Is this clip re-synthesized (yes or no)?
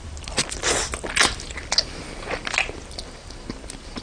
no